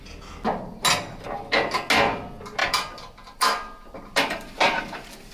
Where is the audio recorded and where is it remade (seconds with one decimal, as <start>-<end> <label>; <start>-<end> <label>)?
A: 0.0-2.6 recorded; 2.6-5.3 remade